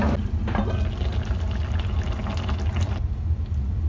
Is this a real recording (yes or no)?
yes